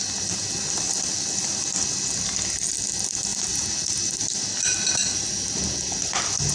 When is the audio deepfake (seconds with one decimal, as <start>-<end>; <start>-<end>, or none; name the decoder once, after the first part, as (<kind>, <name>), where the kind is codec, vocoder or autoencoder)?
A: none